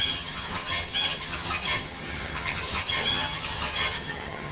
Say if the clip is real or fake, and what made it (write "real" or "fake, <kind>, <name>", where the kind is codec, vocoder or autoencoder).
fake, vocoder, HiFi-GAN